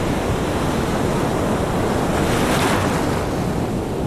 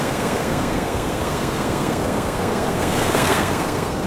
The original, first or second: first